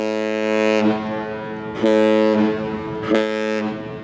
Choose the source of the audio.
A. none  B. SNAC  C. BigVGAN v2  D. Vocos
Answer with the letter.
A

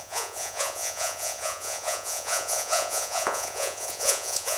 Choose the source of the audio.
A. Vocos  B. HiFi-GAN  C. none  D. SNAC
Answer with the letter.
A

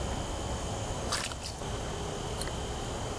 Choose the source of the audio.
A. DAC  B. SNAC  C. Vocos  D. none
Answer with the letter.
D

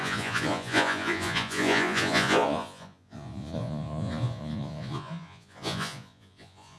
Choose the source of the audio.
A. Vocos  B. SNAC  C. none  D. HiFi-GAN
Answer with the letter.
A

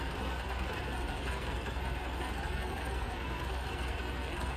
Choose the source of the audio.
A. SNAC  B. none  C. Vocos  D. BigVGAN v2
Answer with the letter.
A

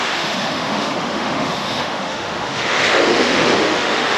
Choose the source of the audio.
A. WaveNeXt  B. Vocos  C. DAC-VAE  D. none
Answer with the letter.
C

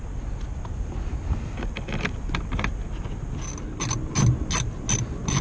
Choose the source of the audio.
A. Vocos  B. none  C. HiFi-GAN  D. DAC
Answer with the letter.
B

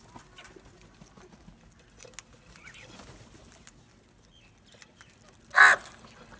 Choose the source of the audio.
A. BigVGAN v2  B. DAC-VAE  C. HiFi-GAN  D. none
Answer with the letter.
D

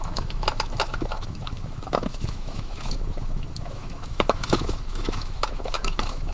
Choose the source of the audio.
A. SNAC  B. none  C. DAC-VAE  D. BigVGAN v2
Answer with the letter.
C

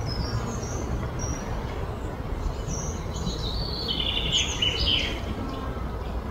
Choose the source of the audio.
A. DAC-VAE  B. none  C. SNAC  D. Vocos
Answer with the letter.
B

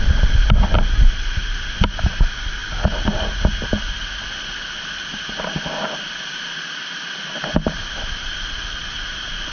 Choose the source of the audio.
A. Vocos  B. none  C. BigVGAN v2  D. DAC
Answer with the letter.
B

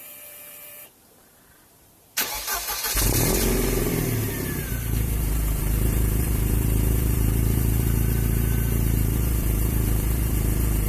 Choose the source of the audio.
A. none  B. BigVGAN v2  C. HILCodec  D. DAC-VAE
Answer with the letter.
B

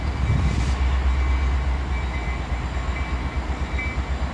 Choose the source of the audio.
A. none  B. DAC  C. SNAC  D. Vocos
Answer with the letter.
A